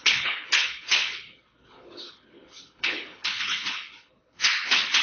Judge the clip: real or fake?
fake